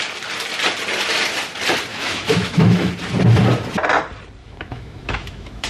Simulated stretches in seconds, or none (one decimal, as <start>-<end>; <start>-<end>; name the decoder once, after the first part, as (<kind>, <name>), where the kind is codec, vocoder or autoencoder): 1.9-2.9 (autoencoder, DAC-VAE); 4.4-5.7